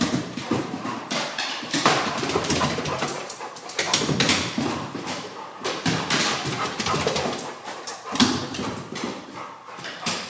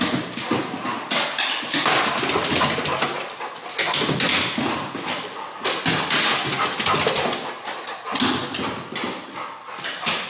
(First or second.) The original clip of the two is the second